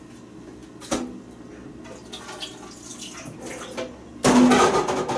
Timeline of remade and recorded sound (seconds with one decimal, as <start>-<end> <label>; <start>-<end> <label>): 0.0-5.2 recorded